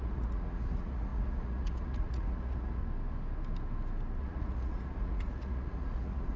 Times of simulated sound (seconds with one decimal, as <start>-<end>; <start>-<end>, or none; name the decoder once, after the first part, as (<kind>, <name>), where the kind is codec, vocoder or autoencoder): 0.0-2.8 (vocoder, Vocos); 4.2-6.4